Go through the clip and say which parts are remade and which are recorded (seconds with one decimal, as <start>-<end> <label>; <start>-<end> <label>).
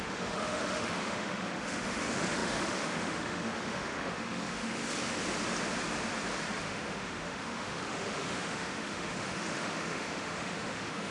0.0-4.8 remade; 4.8-6.6 recorded; 6.6-11.1 remade